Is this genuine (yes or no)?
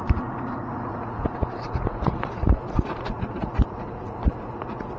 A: no